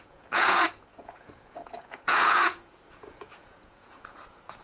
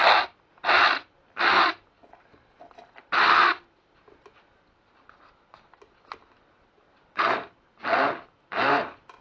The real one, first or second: second